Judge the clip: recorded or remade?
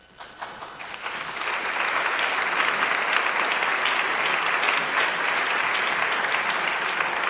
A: recorded